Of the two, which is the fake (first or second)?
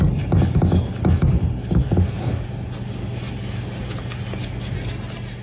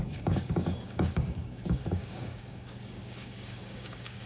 second